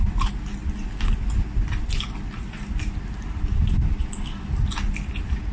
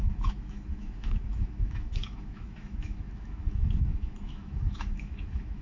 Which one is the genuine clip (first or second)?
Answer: first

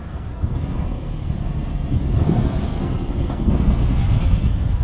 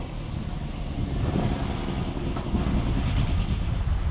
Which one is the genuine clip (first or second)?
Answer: second